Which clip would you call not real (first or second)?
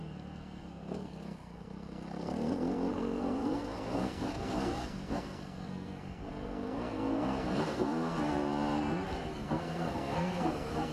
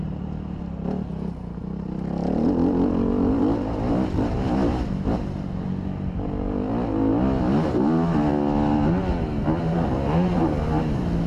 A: first